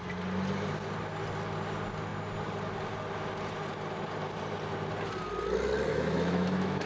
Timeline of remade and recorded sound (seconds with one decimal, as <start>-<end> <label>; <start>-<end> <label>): 0.0-5.9 recorded; 5.9-6.9 remade